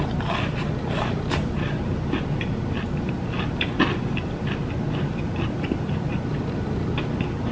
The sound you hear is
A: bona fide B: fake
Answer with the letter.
A